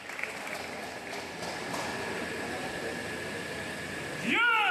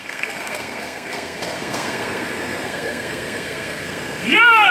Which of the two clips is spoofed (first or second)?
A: second